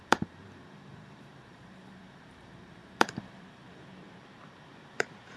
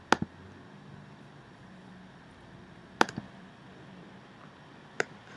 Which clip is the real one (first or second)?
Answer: second